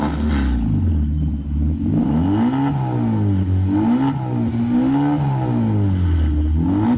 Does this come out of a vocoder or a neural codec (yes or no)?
no